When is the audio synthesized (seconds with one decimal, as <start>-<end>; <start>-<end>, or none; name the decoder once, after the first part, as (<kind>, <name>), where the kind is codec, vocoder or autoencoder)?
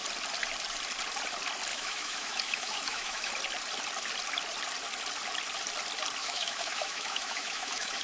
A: 1.7-3.3 (autoencoder, DAC-VAE); 6.2-8.0